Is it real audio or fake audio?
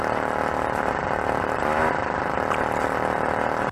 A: fake